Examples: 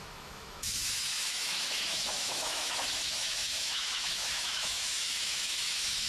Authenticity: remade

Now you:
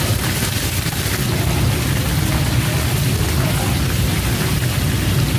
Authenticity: recorded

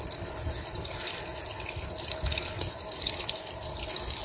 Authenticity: recorded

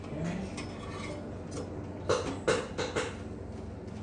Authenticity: recorded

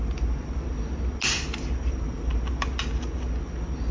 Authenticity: recorded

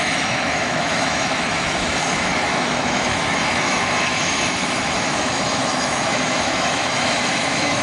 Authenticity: remade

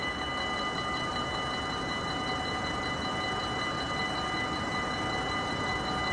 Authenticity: recorded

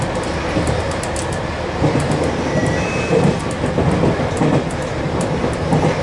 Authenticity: recorded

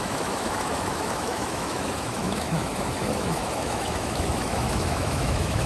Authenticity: remade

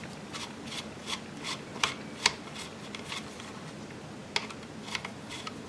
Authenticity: recorded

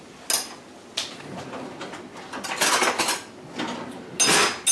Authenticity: recorded